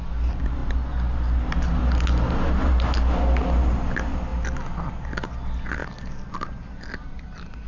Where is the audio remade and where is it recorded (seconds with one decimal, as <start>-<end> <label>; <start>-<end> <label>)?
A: 0.0-7.7 recorded